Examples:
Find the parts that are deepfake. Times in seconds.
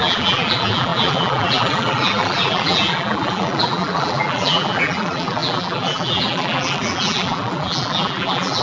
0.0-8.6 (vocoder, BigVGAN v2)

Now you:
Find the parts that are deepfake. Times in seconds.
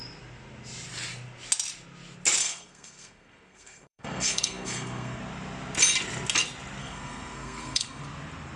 2.4-5.2 (codec, SNAC); 6.8-8.0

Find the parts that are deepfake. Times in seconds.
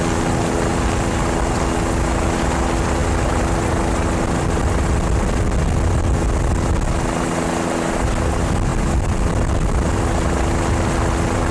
none